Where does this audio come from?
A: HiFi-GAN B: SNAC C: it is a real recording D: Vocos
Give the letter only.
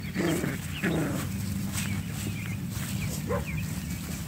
C